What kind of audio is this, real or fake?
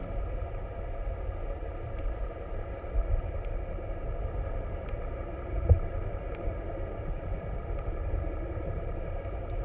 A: real